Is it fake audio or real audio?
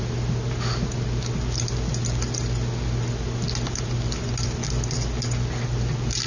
real